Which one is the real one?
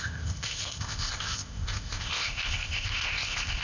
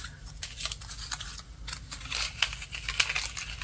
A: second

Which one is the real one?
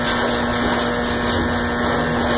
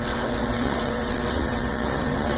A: first